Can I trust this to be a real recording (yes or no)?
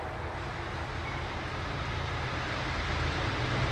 yes